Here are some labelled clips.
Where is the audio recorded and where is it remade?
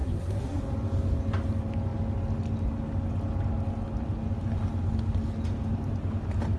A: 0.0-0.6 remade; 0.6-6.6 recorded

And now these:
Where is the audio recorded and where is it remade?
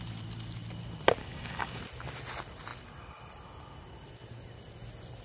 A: 0.0-1.2 recorded; 1.2-1.8 remade; 1.8-5.2 recorded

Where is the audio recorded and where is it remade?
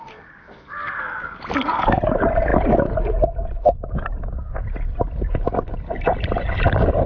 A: 0.0-7.1 recorded